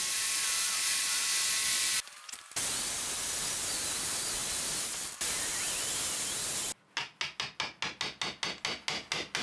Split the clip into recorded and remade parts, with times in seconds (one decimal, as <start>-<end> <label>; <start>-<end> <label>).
0.0-9.4 recorded